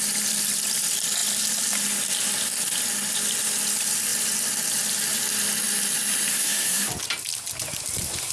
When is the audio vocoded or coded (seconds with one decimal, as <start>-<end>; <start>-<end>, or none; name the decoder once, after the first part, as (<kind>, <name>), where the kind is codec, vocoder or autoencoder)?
6.3-6.9 (codec, SNAC)